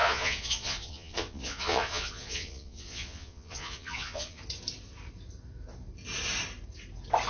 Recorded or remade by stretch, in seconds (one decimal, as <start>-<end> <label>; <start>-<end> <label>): 0.0-4.4 remade; 4.4-7.3 recorded